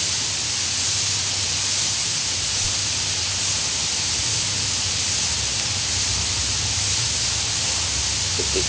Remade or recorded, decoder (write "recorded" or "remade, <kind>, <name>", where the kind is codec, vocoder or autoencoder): recorded